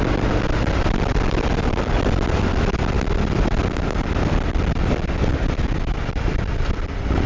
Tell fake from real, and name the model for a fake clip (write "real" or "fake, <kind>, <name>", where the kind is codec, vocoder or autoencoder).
real